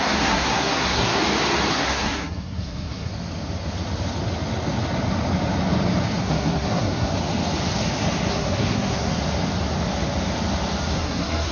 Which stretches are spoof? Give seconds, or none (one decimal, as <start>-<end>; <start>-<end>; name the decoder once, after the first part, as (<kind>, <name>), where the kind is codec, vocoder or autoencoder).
0.0-1.2 (codec, SNAC); 1.7-3.1; 6.2-7.1; 8.3-9.2; 10.9-11.5